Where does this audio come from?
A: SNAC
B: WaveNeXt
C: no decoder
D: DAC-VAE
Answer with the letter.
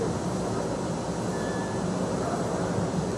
C